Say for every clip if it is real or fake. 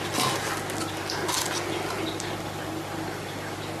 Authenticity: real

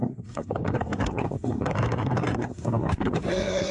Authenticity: fake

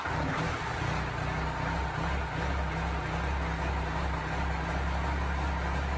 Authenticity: real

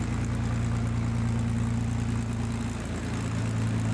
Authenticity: real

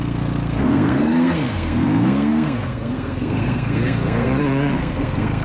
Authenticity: fake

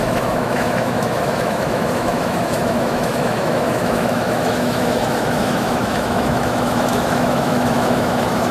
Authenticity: fake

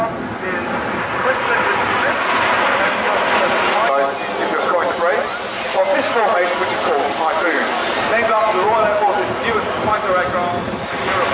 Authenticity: real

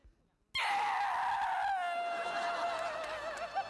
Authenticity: real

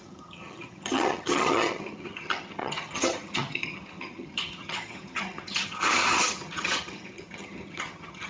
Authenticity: fake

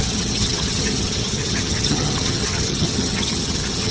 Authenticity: fake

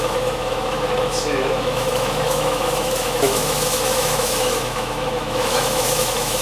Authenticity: fake